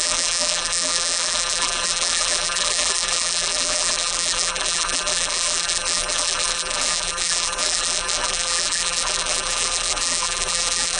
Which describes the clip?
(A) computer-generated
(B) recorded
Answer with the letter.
A